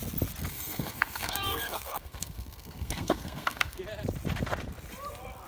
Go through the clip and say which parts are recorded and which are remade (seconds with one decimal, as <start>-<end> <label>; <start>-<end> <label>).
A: 0.0-0.5 recorded; 0.5-3.8 remade; 3.8-5.5 recorded